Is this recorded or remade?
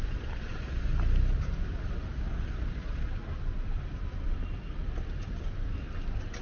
recorded